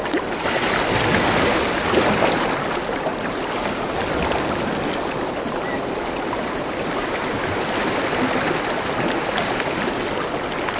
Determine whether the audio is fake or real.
real